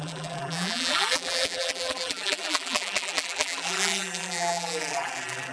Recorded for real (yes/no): no